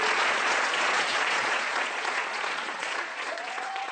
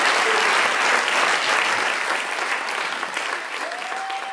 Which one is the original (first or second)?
second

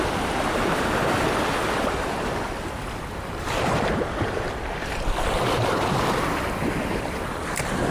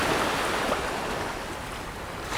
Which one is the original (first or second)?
second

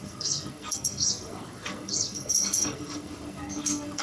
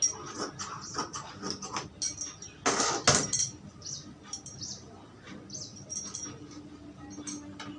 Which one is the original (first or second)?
second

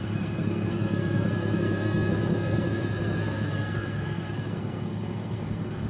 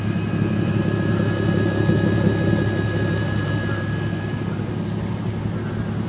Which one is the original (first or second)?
second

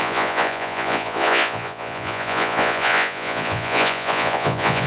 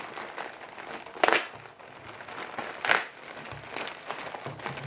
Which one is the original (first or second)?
second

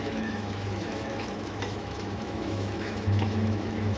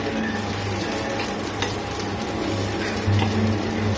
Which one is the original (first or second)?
second